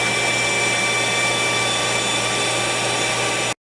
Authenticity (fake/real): real